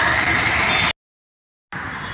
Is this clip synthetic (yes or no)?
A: no